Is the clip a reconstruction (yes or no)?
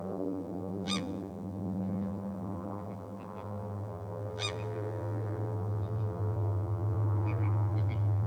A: yes